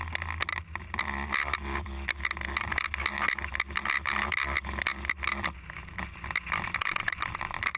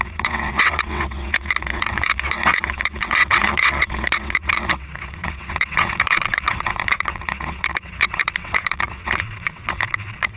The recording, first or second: first